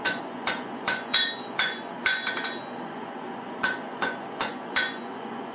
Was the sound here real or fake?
fake